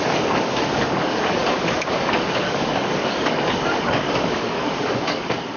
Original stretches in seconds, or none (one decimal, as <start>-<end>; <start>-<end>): none